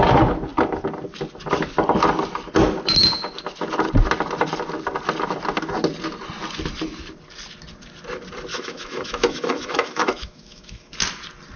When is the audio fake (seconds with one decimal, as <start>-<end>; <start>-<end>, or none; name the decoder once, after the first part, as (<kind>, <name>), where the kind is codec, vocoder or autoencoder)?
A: 8.5-10.9 (autoencoder, DAC-VAE)